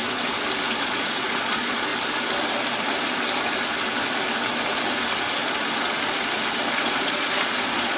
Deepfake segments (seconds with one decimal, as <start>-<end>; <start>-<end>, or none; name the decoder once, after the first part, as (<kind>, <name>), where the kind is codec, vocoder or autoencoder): 0.8-1.9 (vocoder, Vocos); 6.7-8.0